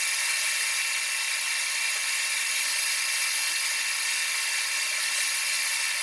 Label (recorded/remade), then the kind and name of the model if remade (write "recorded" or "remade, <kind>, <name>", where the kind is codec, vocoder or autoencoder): recorded